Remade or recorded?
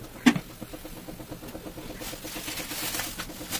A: recorded